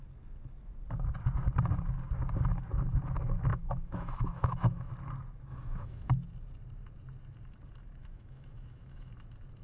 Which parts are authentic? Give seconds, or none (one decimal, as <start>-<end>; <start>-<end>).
0.0-3.5; 4.9-5.5; 6.1-8.0; 9.1-9.6